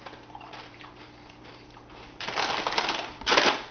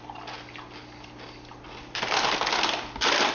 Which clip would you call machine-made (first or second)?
first